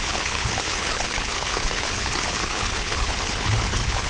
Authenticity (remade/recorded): remade